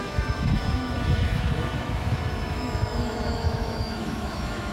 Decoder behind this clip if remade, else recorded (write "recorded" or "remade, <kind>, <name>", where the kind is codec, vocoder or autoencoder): remade, autoencoder, DAC-VAE